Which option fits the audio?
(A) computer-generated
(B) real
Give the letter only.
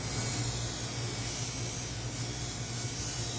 B